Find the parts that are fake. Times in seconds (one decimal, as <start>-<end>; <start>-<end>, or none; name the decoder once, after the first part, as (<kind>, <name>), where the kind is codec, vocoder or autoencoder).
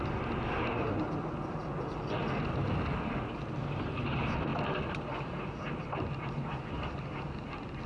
none